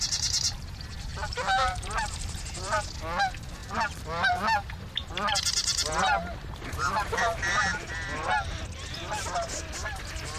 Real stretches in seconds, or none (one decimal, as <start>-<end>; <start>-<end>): 0.0-1.1; 2.9-3.6; 4.4-10.4